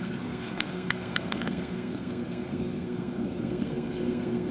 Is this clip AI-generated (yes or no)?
yes